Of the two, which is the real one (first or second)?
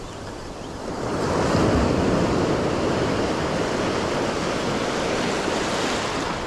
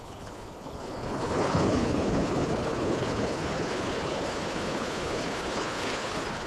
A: first